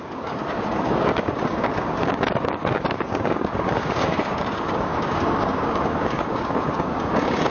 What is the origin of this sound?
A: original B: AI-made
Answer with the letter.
B